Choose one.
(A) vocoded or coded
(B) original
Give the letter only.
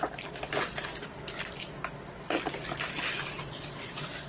A